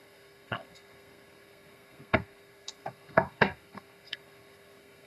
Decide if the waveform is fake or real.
fake